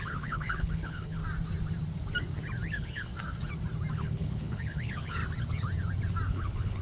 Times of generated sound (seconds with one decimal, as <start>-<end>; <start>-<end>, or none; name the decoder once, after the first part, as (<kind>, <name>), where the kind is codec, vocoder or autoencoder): 0.0-1.2 (codec, HILCodec); 2.7-3.1; 3.9-5.2; 6.3-6.8